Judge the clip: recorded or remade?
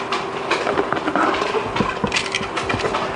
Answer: recorded